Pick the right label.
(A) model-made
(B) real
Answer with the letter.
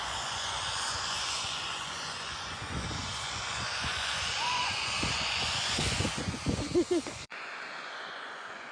A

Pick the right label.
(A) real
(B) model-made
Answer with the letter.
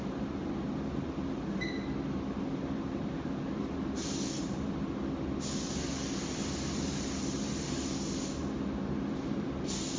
A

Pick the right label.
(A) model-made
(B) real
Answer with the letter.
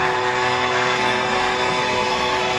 A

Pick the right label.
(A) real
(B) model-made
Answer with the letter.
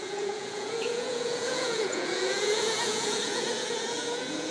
B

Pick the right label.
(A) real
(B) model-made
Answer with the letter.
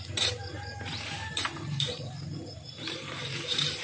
B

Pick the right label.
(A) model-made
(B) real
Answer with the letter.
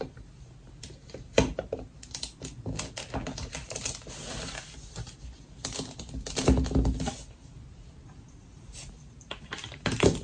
B